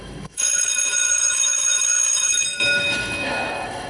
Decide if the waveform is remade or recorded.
remade